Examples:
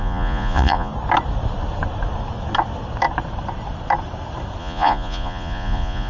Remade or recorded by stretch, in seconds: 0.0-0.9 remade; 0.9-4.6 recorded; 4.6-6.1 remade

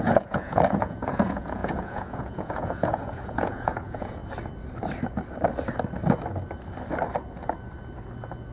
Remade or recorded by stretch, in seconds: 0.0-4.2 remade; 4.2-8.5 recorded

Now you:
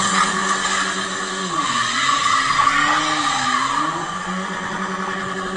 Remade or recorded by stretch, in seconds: 0.0-0.4 remade; 0.4-1.4 recorded; 1.4-2.2 remade; 2.2-3.8 recorded; 3.8-5.6 remade